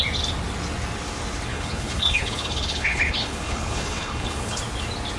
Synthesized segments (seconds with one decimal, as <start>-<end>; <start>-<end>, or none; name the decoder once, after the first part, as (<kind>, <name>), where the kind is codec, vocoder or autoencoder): 1.5-4.6 (codec, HILCodec)